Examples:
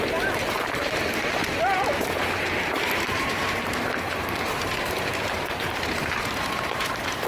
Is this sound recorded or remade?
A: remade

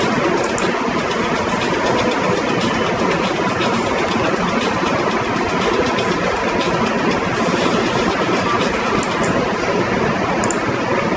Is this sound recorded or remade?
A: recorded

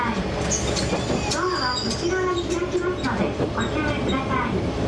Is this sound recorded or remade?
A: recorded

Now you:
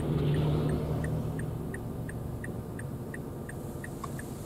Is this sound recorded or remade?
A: recorded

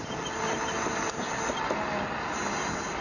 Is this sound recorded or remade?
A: recorded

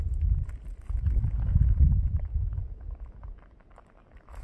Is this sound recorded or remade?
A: recorded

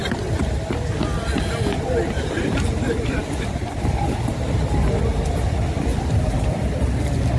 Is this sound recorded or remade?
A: recorded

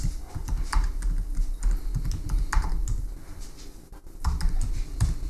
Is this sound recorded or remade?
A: recorded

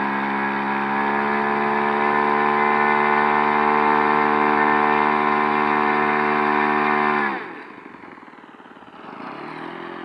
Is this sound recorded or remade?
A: recorded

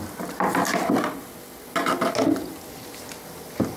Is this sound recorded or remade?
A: recorded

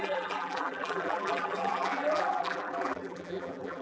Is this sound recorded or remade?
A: remade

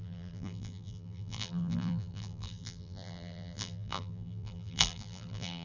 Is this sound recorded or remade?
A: remade